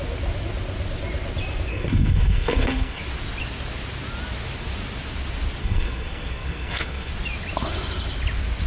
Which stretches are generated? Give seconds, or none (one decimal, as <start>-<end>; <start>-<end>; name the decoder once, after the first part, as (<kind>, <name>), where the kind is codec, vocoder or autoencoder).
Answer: 1.7-3.0 (codec, SNAC); 5.6-7.1